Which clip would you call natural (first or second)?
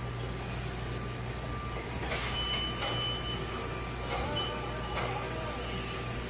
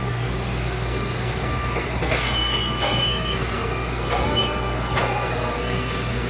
first